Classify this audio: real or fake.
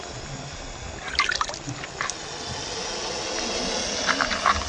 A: real